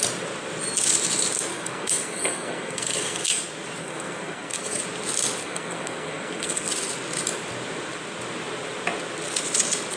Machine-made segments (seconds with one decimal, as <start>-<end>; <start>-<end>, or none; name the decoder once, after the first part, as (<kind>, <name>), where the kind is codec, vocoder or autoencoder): 1.5-3.4 (codec, SNAC); 3.8-4.8; 5.4-6.7